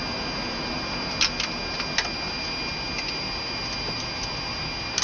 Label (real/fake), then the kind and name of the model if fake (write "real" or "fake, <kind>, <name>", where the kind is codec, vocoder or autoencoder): real